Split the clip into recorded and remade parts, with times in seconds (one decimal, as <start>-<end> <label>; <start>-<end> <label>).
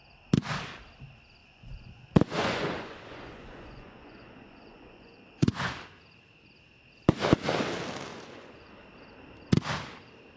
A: 0.0-1.4 recorded; 1.4-5.7 remade; 5.7-8.1 recorded; 8.1-8.7 remade; 8.7-10.4 recorded